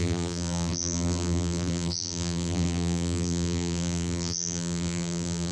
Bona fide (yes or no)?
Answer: no